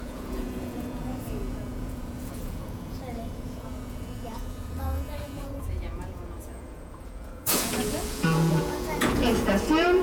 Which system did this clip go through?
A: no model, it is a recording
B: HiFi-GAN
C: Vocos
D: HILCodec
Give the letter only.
C